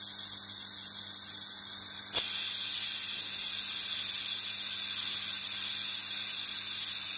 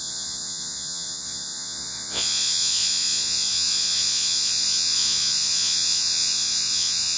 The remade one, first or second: second